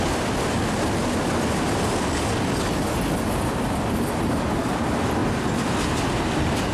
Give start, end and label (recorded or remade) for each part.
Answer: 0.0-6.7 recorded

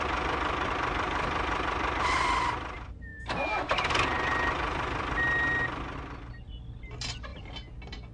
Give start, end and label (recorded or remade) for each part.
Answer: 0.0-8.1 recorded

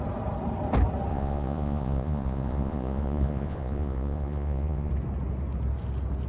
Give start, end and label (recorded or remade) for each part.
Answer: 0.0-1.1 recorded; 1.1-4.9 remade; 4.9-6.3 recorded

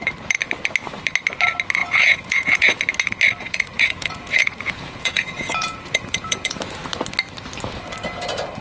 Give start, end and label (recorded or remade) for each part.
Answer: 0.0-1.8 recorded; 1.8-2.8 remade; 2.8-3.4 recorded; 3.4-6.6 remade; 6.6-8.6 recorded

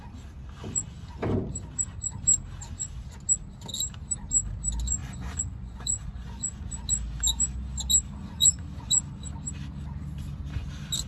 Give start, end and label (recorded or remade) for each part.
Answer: 0.0-5.0 recorded; 5.0-6.7 remade; 6.7-8.2 recorded; 8.2-9.0 remade; 9.0-11.1 recorded

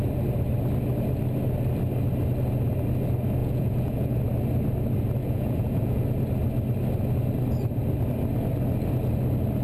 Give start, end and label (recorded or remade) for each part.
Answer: 0.0-3.4 recorded; 3.4-4.2 remade; 4.2-5.2 recorded; 5.2-6.0 remade; 6.0-9.6 recorded

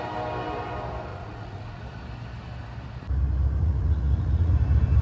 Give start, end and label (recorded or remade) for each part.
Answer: 0.0-1.1 recorded; 1.1-1.8 remade; 1.8-3.6 recorded; 3.6-4.5 remade; 4.5-5.0 recorded